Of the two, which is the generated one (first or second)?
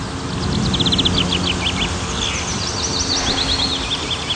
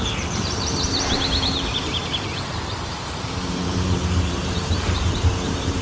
second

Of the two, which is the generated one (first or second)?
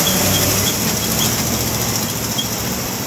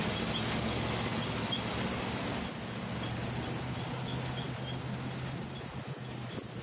first